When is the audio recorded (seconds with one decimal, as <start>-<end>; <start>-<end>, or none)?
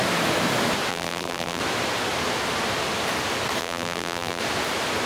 0.0-0.9; 1.6-3.6; 4.4-5.1